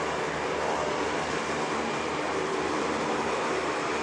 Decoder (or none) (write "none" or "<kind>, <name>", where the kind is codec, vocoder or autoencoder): vocoder, BigVGAN v2